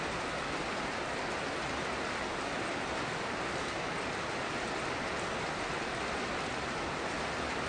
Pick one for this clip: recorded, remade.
recorded